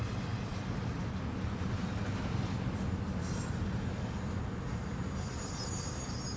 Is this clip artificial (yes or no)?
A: no